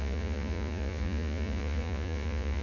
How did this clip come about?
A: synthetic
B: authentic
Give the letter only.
A